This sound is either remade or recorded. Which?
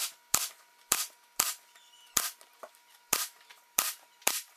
remade